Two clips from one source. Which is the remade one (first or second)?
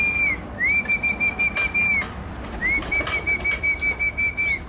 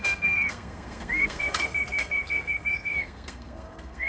second